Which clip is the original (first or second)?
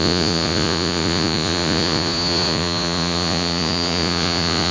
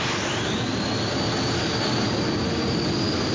second